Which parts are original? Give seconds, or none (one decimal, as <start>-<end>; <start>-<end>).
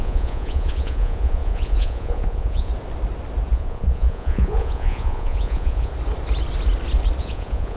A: 2.7-3.5; 5.9-7.2